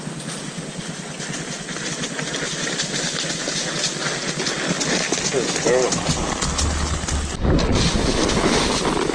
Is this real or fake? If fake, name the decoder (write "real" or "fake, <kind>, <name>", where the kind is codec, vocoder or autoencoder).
real